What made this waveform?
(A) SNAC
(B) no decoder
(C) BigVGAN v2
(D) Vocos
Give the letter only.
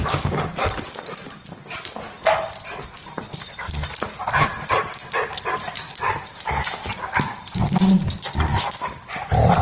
B